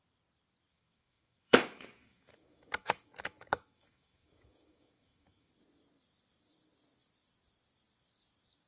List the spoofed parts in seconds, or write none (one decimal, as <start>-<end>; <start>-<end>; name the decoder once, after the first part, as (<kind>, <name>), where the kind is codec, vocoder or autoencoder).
0.7-5.5 (autoencoder, DAC-VAE)